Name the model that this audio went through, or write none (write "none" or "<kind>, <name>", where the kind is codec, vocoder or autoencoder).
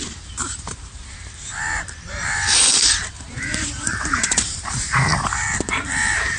vocoder, BigVGAN v2